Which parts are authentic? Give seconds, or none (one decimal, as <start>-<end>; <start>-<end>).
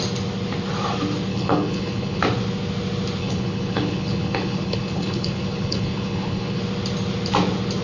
0.0-1.3; 2.2-3.2; 6.6-7.8